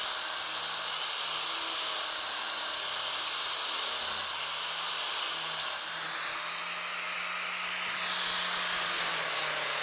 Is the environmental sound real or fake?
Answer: real